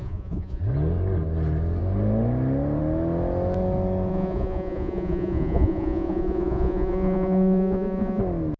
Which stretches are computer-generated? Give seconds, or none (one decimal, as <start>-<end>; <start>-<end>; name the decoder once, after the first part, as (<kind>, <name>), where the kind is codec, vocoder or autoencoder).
0.0-0.6 (vocoder, Vocos); 4.1-8.2